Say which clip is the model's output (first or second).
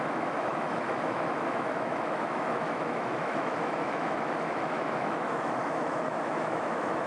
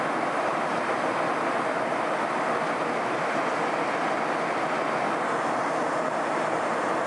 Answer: first